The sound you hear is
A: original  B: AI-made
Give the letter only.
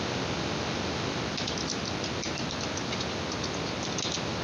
A